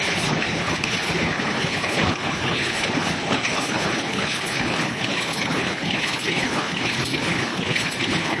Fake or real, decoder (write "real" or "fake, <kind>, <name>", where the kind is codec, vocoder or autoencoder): fake, codec, HILCodec